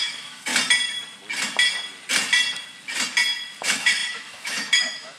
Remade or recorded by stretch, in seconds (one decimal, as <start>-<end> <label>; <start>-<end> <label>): 0.0-0.5 remade; 0.5-3.6 recorded; 3.6-5.2 remade